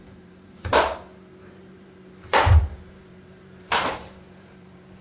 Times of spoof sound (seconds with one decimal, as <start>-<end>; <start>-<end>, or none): 0.0-0.9; 1.4-5.0